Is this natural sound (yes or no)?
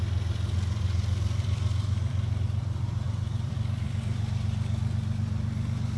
no